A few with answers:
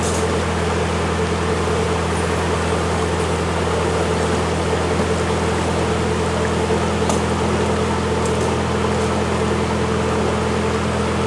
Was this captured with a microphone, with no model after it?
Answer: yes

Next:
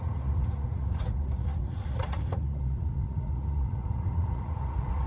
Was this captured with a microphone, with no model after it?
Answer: no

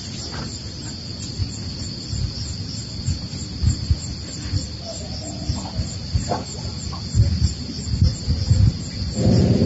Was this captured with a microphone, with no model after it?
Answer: yes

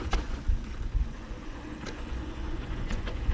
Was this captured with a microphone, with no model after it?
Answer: no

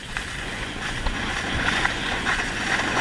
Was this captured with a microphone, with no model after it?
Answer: no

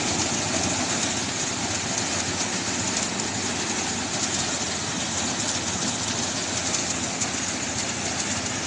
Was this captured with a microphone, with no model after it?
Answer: yes